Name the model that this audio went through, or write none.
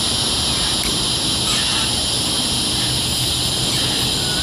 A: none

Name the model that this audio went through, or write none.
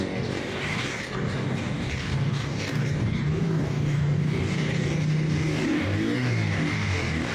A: codec, DAC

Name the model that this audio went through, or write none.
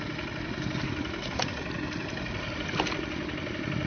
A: none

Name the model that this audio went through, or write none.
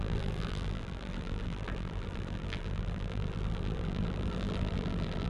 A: vocoder, BigVGAN v2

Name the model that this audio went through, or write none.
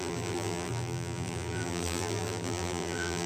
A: vocoder, BigVGAN v2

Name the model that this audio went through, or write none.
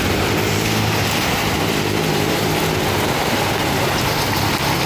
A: none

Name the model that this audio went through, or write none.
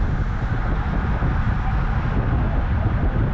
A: none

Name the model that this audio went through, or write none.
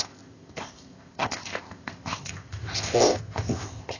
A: codec, ZipCodec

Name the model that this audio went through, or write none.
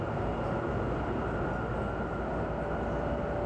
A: none